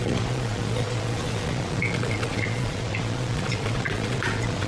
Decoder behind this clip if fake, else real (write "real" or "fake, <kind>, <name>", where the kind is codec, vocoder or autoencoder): fake, vocoder, Vocos